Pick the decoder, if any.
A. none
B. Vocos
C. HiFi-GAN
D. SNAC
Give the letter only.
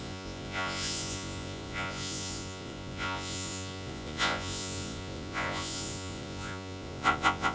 B